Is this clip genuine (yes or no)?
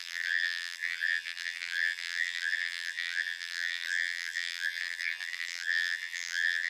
no